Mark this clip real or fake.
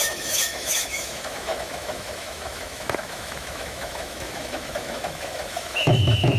fake